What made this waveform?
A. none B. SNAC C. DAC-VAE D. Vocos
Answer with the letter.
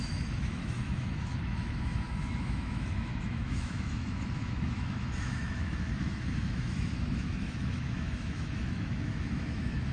C